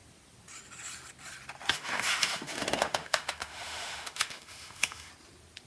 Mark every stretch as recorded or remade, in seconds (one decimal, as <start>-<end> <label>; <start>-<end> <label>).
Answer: 0.0-1.7 recorded; 1.7-5.1 remade; 5.1-5.7 recorded